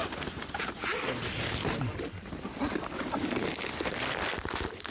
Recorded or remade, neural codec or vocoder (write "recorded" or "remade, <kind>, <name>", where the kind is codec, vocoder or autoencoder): recorded